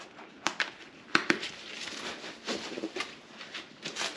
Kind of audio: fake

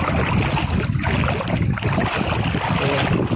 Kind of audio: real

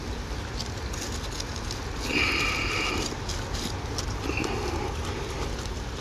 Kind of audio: real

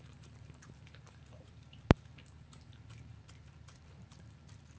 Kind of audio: fake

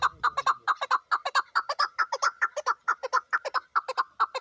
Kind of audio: real